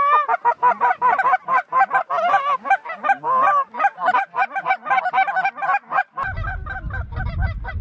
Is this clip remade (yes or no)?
no